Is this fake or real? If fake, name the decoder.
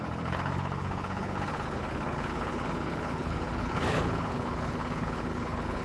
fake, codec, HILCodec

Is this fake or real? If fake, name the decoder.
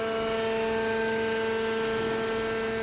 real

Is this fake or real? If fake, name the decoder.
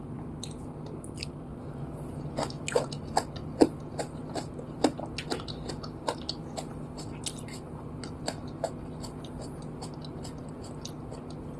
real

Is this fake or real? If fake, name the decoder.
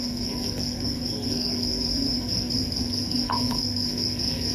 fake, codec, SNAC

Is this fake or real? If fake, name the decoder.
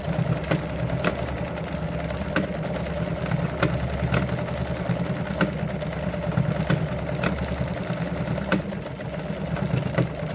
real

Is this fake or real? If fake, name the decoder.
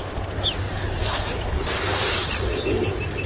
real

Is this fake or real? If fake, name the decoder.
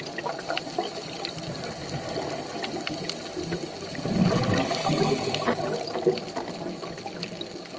real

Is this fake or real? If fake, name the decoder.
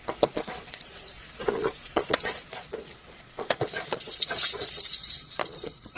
fake, vocoder, Vocos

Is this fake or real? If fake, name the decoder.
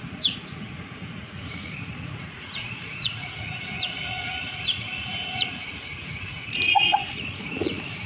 fake, vocoder, Vocos